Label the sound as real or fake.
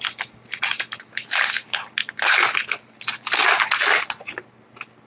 real